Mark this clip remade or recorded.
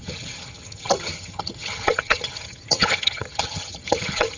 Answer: remade